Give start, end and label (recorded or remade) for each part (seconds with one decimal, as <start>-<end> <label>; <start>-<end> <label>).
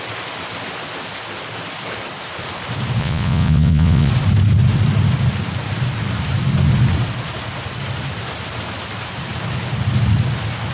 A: 0.0-3.0 recorded; 3.0-4.1 remade; 4.1-10.7 recorded